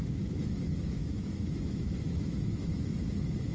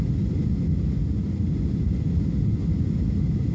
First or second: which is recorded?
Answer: second